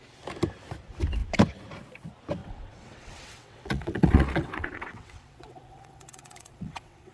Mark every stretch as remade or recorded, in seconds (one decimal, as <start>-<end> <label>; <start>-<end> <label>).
0.0-2.4 recorded; 2.4-7.1 remade